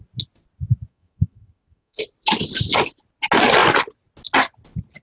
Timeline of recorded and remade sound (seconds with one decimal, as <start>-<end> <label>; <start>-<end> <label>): 0.0-0.9 recorded; 0.9-2.0 remade; 2.0-5.0 recorded